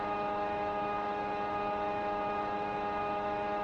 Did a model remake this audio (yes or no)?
yes